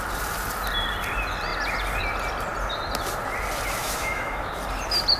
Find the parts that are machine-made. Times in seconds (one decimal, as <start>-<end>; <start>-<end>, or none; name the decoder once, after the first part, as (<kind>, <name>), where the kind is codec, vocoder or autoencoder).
3.8-4.5 (autoencoder, DAC-VAE)